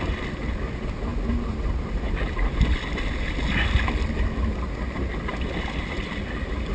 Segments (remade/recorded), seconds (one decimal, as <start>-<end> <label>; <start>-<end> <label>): 0.0-6.7 recorded